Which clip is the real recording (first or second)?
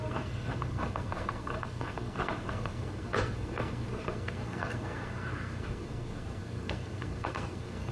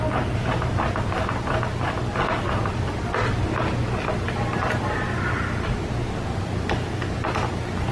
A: second